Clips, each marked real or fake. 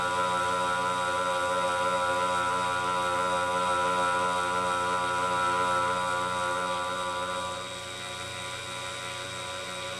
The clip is real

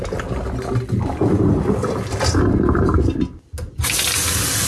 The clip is real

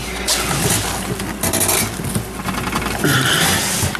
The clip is real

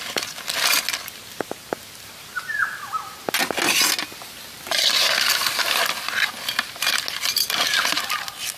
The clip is real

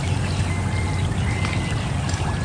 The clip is real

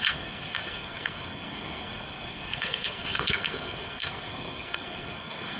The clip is fake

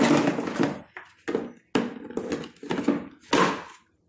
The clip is real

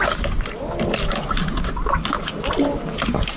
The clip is real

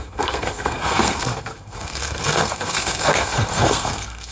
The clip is fake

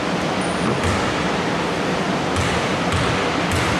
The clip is real